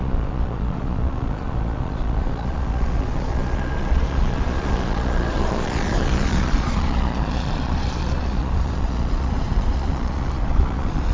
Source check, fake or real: fake